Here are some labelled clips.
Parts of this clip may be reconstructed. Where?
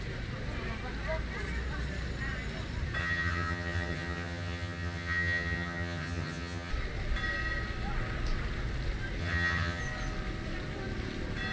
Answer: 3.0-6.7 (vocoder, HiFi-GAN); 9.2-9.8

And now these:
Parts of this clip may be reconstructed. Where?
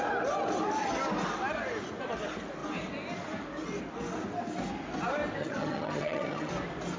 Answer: 5.4-6.5 (vocoder, HiFi-GAN)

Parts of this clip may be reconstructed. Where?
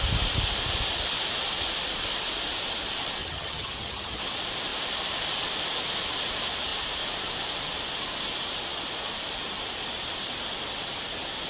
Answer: 3.2-4.2 (vocoder, HiFi-GAN)